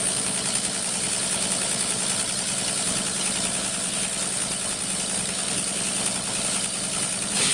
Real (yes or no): no